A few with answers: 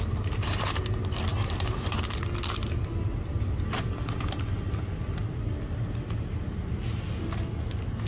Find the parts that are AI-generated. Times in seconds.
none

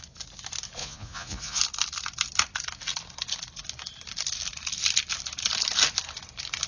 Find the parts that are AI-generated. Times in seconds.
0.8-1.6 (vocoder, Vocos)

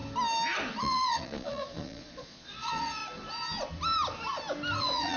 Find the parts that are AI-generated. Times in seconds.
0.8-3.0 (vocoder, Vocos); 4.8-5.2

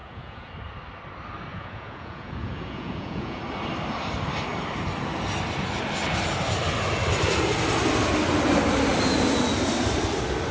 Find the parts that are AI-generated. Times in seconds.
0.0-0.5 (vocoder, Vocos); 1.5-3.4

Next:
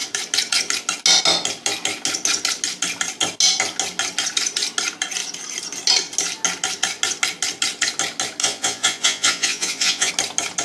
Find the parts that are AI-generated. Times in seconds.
8.4-10.1 (vocoder, Vocos)